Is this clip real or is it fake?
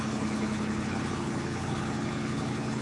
fake